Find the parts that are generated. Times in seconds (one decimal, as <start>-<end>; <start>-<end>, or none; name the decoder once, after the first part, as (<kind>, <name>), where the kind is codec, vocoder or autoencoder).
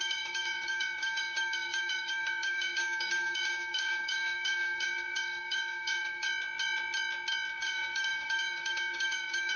0.0-6.3 (codec, DAC); 7.5-9.6